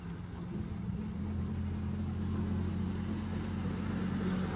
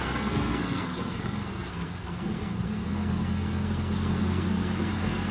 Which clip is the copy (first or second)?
second